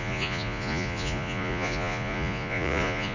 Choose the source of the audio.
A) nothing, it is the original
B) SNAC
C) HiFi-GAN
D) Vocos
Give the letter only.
D